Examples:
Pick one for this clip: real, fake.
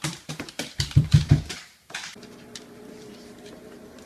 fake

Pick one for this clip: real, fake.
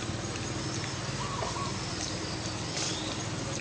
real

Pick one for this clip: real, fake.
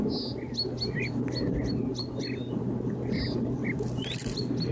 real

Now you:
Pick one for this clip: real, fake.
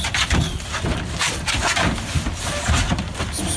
fake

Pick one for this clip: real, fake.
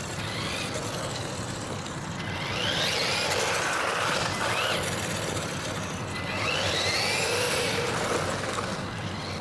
real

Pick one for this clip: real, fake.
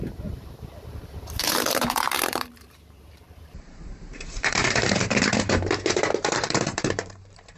fake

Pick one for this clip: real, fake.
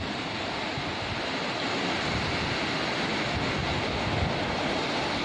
real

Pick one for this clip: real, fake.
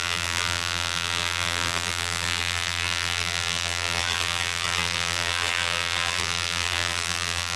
fake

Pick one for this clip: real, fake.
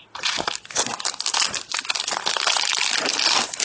real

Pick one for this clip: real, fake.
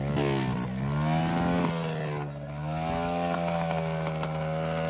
real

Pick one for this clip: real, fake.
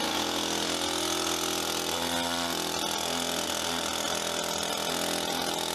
real